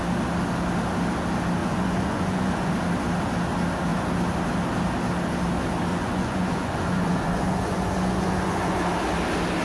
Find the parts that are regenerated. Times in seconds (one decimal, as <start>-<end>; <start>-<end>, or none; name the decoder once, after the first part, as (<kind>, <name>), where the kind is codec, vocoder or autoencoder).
1.6-2.7 (vocoder, Vocos); 5.9-8.8